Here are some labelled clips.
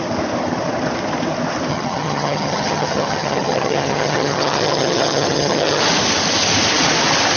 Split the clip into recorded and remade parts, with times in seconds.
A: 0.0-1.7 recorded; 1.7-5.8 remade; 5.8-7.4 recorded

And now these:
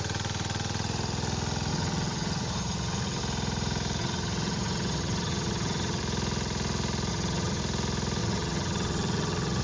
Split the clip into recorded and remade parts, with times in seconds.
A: 0.0-1.7 recorded; 1.7-3.2 remade; 3.2-4.0 recorded; 4.0-6.0 remade; 6.0-7.1 recorded; 7.1-7.6 remade; 7.6-8.2 recorded; 8.2-9.6 remade

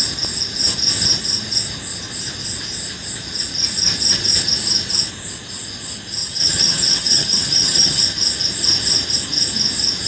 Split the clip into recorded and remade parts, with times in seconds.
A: 0.0-6.2 recorded; 6.2-8.0 remade; 8.0-10.1 recorded

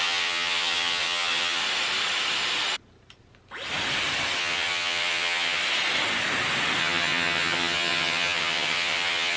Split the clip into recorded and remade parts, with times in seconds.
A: 0.0-1.6 remade; 1.6-4.4 recorded; 4.4-5.6 remade; 5.6-6.8 recorded; 6.8-9.4 remade

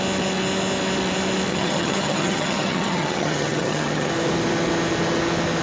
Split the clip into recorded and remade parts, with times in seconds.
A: 0.0-1.5 recorded; 1.5-4.1 remade; 4.1-5.6 recorded

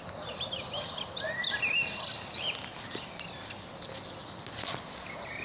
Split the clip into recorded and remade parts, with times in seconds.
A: 0.0-5.4 recorded

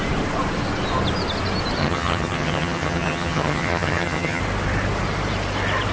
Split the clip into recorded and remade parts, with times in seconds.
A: 0.0-1.8 recorded; 1.8-4.4 remade; 4.4-5.9 recorded